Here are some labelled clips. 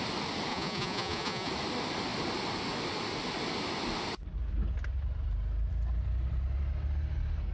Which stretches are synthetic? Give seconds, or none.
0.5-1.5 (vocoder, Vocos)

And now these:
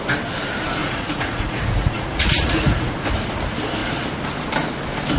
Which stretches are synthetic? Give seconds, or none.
0.8-3.1 (vocoder, Vocos)

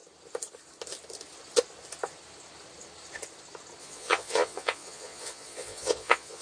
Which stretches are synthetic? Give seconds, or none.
3.8-6.4 (vocoder, Vocos)

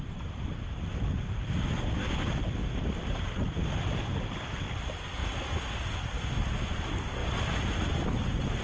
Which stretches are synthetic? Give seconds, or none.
none

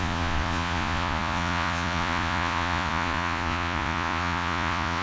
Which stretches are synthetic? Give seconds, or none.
0.0-5.0 (vocoder, Vocos)

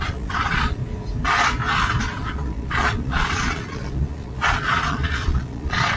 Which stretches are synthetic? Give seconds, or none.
0.0-0.8 (vocoder, Vocos); 2.0-6.0